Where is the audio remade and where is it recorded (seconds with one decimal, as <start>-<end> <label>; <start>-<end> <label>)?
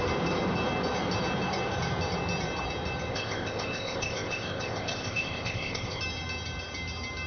0.0-3.1 recorded; 3.1-6.0 remade; 6.0-7.3 recorded